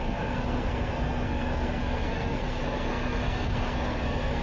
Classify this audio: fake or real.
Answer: fake